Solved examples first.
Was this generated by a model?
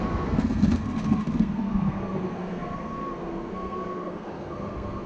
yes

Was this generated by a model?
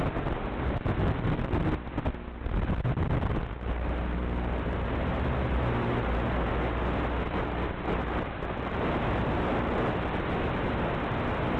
no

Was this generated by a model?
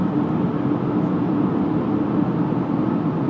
no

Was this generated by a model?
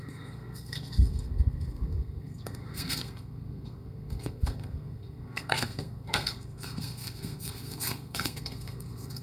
yes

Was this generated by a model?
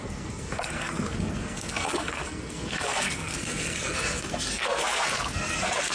yes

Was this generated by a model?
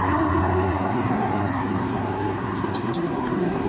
yes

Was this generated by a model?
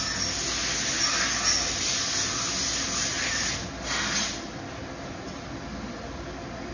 no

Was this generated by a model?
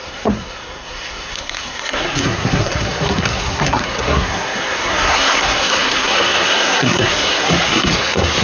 yes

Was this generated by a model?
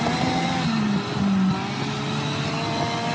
no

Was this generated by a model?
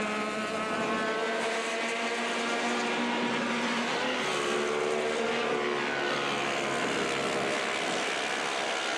no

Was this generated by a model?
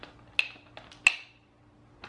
no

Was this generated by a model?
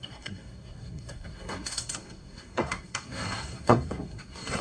yes